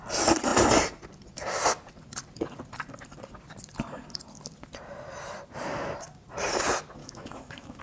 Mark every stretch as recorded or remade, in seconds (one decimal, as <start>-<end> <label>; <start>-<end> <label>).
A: 0.0-7.0 recorded; 7.0-7.8 remade